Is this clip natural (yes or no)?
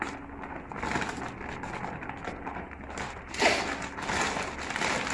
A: yes